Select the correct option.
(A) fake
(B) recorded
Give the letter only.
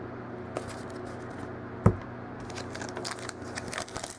B